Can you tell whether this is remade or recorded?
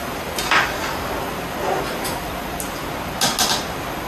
recorded